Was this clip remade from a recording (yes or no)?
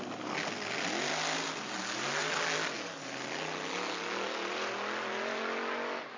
no